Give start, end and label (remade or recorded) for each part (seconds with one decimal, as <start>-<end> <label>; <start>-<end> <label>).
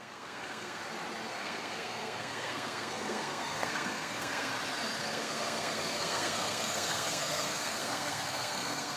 0.0-0.8 remade; 0.8-1.3 recorded; 1.3-4.5 remade; 4.5-5.0 recorded; 5.0-9.0 remade